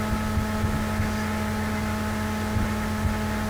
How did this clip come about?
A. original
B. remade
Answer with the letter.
A